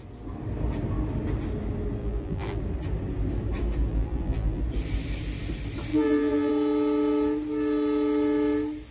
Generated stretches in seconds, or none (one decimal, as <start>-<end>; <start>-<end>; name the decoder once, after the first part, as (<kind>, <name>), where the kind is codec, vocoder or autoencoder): 2.0-2.6 (vocoder, BigVGAN v2); 3.9-4.6; 5.9-6.5

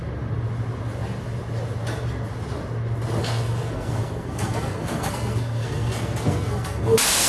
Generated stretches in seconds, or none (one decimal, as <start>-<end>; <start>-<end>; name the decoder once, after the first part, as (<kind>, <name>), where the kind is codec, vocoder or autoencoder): 3.2-7.3 (codec, SNAC)